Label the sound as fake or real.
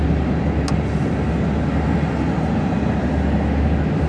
real